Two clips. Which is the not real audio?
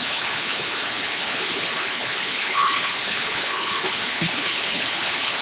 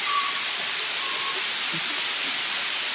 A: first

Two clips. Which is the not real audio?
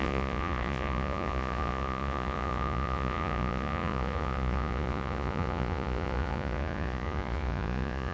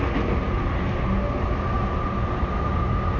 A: first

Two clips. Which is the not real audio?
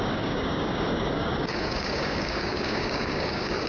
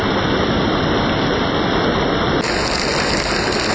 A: first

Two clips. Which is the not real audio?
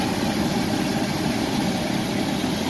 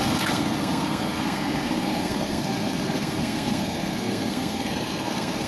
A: second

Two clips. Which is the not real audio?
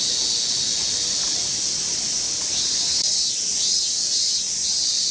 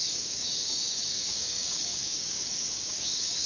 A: second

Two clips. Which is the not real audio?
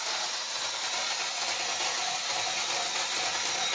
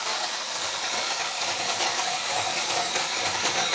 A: second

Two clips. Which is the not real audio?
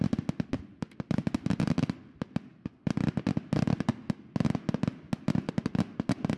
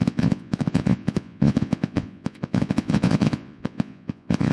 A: second